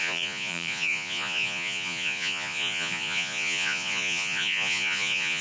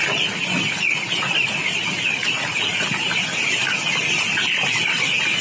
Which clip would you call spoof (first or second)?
first